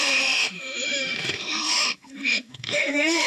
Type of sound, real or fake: fake